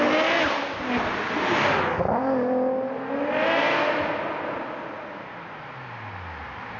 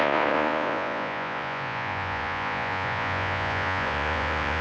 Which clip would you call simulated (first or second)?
second